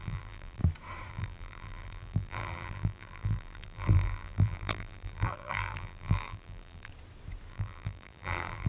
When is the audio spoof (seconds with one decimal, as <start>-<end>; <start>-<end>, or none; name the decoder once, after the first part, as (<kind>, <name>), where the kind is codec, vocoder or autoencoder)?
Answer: 0.0-0.6 (vocoder, BigVGAN v2); 1.1-6.9; 7.5-8.7